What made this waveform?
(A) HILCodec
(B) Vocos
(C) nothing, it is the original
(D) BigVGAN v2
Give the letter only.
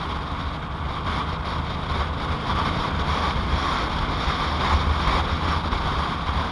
C